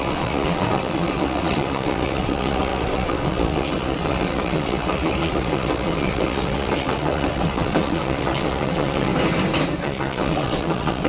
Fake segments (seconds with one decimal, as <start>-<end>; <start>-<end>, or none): 0.0-9.1; 9.8-11.1